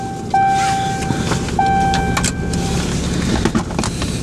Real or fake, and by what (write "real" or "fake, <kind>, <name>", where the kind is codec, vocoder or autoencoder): real